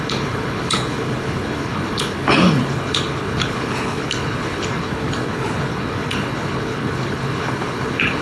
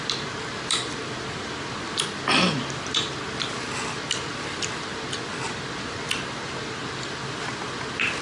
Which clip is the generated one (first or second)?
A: first